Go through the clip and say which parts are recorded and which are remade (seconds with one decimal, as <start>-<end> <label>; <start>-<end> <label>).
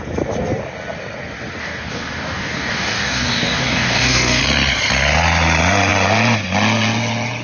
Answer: 0.0-1.6 recorded; 1.6-4.4 remade; 4.4-7.4 recorded